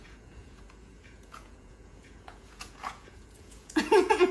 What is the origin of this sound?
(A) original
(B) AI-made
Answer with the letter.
B